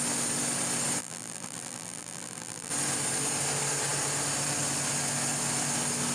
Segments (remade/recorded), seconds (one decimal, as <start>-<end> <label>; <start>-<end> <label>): 0.0-1.0 recorded; 1.0-2.7 remade; 2.7-6.1 recorded